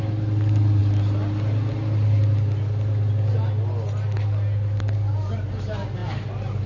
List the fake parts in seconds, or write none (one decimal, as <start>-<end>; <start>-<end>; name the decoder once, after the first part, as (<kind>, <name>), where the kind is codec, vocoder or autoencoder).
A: none

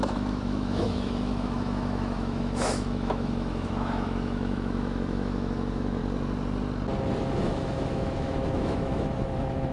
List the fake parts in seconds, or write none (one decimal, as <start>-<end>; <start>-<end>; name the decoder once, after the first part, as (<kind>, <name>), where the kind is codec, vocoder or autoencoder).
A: 0.0-6.0 (autoencoder, DAC-VAE); 7.2-9.7

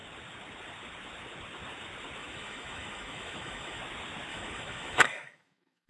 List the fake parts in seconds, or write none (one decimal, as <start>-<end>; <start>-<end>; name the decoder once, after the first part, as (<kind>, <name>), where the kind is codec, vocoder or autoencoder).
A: 2.2-3.8 (autoencoder, DAC-VAE); 4.3-5.9